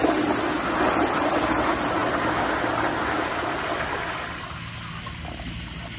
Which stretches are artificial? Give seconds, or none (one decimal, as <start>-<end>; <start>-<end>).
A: none